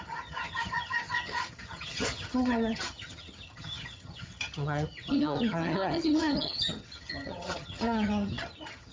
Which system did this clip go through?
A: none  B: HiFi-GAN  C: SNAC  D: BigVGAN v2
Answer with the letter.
B